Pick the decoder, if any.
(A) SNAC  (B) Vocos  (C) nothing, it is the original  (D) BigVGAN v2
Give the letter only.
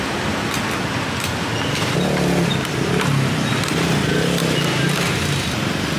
C